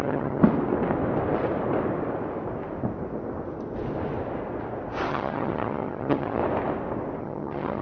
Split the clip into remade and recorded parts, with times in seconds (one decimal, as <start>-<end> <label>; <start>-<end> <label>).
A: 0.0-0.4 remade; 0.4-5.1 recorded; 5.1-6.4 remade; 6.4-7.2 recorded; 7.2-7.8 remade

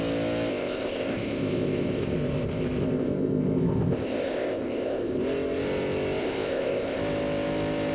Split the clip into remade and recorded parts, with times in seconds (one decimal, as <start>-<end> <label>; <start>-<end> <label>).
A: 0.0-0.5 recorded; 0.5-5.2 remade; 5.2-6.2 recorded; 6.2-7.0 remade; 7.0-7.9 recorded

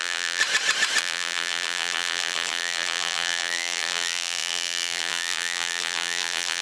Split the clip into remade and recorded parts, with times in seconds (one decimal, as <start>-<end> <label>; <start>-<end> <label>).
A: 0.0-0.4 remade; 0.4-1.0 recorded; 1.0-6.6 remade

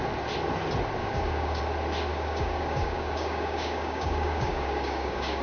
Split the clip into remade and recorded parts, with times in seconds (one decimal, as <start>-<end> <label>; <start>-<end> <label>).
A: 0.0-1.0 recorded; 1.0-1.6 remade; 1.6-2.1 recorded; 2.1-5.4 remade

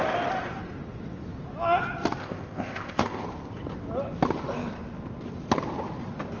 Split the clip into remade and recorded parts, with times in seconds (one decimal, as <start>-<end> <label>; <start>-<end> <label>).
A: 0.0-2.2 recorded; 2.2-3.2 remade; 3.2-6.4 recorded

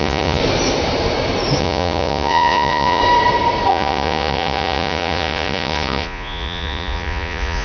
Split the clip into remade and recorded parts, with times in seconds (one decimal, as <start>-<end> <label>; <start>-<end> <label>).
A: 0.0-0.4 remade; 0.4-1.6 recorded; 1.6-3.0 remade; 3.0-3.7 recorded; 3.7-7.6 remade

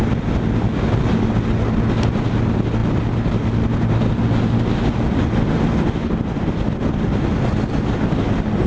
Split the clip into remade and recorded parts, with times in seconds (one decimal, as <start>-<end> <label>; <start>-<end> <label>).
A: 0.0-8.7 recorded

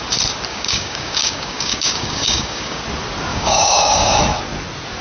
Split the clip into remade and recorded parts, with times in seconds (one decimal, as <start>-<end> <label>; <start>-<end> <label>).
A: 0.0-0.5 recorded; 0.5-2.8 remade; 2.8-3.3 recorded; 3.3-4.2 remade; 4.2-5.0 recorded